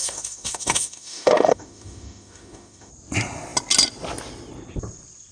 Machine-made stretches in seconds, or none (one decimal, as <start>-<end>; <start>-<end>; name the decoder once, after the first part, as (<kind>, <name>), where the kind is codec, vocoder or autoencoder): 0.0-2.9 (autoencoder, DAC-VAE)